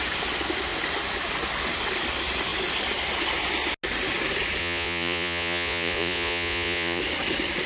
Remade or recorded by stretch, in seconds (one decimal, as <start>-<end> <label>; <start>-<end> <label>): 0.0-4.6 recorded; 4.6-7.0 remade; 7.0-7.7 recorded